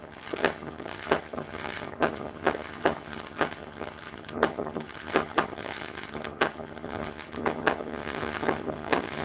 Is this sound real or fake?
fake